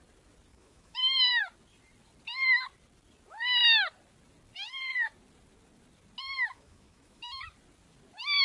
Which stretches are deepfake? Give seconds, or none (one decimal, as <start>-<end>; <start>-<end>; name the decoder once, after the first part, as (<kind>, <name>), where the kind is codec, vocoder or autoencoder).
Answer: 0.5-1.4 (autoencoder, DAC-VAE); 6.2-7.4